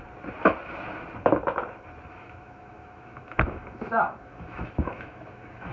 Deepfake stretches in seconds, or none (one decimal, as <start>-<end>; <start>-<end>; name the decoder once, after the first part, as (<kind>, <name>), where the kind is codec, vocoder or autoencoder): 2.1-5.7 (autoencoder, DAC-VAE)